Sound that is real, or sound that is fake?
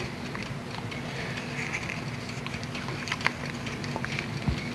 real